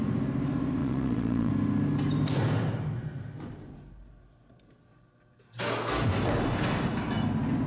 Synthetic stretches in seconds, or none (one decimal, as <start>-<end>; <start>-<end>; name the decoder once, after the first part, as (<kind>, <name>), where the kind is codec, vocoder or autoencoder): 0.8-1.5 (vocoder, WaveNeXt)